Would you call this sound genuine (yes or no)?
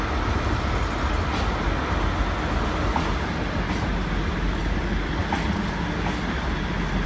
yes